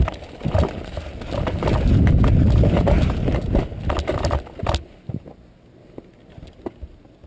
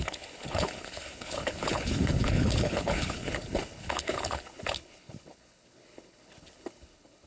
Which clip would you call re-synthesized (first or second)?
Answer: second